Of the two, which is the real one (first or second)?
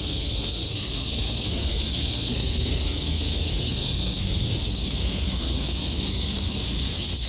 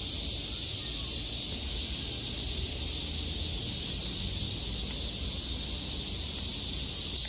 second